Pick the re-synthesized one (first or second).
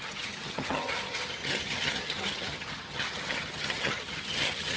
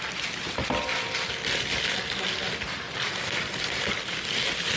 first